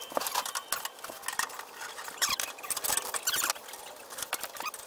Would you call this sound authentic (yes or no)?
yes